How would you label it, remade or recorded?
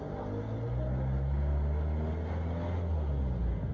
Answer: recorded